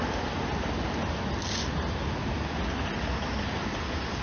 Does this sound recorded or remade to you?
recorded